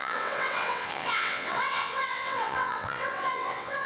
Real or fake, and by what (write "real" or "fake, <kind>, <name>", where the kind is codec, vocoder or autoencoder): fake, vocoder, WaveNeXt